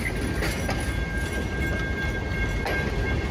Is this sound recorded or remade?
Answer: recorded